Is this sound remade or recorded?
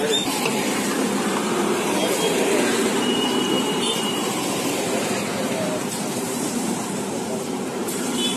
remade